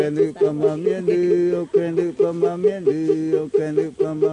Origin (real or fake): real